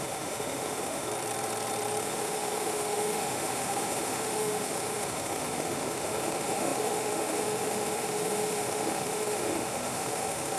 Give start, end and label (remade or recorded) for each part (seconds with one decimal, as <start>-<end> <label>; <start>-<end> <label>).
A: 0.0-1.1 remade; 1.1-2.0 recorded; 2.0-10.6 remade